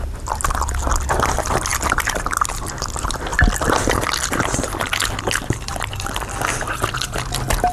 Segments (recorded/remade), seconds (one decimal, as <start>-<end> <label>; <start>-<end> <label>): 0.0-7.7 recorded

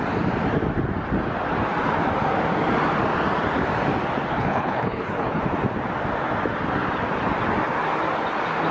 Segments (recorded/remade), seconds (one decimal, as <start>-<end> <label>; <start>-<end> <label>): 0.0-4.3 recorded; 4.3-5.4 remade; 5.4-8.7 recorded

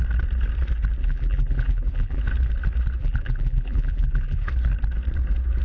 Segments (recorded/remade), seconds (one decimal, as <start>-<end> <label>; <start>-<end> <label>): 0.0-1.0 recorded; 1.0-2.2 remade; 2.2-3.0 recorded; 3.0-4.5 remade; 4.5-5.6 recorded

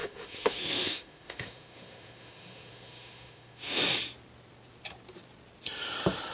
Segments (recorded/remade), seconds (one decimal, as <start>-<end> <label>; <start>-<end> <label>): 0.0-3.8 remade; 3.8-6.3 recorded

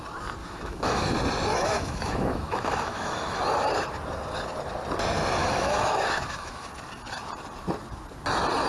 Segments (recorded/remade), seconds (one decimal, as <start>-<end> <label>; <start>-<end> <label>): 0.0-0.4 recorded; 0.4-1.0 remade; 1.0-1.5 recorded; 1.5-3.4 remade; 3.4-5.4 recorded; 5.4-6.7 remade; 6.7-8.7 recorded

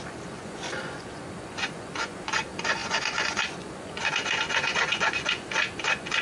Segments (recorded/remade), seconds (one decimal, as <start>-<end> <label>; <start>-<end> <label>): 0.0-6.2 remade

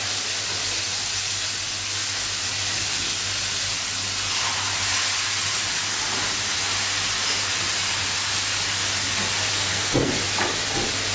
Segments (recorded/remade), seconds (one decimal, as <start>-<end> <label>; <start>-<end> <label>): 0.0-9.5 recorded; 9.5-10.1 remade; 10.1-11.1 recorded

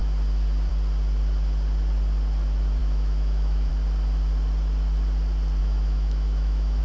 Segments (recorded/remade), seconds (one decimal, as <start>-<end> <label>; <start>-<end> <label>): 0.0-2.8 recorded; 2.8-3.7 remade; 3.7-5.6 recorded; 5.6-6.8 remade